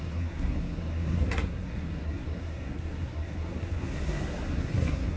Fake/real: fake